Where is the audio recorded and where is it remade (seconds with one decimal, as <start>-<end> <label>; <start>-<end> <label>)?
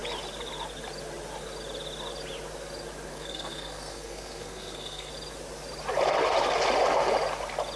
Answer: 0.0-3.1 recorded; 3.1-5.1 remade; 5.1-7.8 recorded